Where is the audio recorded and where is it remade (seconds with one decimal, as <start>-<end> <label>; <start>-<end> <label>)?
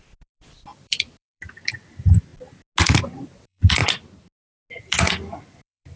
0.0-2.3 remade; 2.3-3.0 recorded; 3.0-3.8 remade; 3.8-4.8 recorded; 4.8-6.0 remade